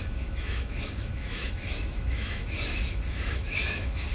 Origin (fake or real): fake